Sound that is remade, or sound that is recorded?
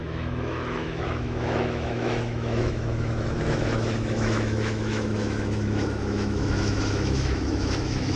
remade